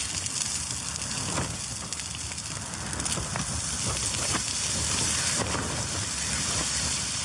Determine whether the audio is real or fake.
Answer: real